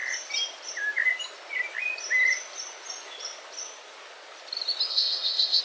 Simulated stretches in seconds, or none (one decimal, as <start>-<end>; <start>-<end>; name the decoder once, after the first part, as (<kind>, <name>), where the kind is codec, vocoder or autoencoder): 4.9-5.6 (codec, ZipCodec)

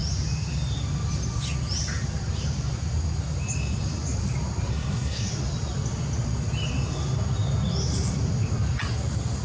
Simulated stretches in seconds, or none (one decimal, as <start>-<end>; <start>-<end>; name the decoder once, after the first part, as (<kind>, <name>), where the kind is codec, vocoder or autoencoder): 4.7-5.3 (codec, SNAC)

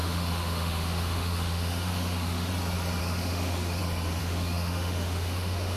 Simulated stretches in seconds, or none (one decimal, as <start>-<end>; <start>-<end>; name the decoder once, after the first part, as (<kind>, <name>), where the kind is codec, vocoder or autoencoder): 0.0-2.5 (autoencoder, DAC-VAE); 3.0-3.8; 4.2-5.8